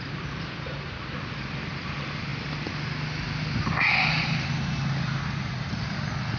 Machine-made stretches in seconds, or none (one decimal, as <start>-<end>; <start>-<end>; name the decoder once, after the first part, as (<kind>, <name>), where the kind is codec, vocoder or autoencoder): none